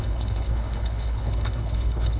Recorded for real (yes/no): no